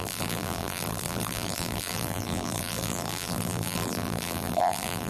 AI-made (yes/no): yes